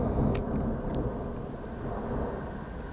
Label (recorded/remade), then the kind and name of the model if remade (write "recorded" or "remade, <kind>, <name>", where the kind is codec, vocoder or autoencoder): recorded